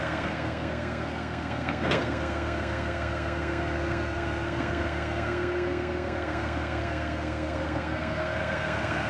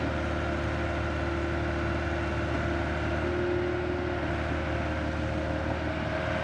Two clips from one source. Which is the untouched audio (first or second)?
second